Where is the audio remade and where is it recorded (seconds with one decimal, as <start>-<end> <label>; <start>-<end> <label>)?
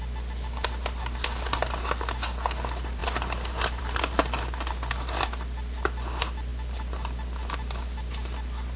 0.0-8.8 recorded